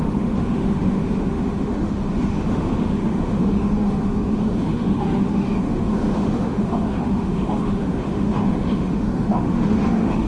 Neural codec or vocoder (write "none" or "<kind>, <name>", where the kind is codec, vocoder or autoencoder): autoencoder, DAC-VAE